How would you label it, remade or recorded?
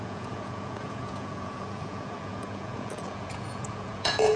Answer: remade